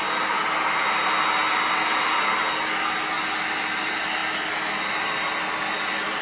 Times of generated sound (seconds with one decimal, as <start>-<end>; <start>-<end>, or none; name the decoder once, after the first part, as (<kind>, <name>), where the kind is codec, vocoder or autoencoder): none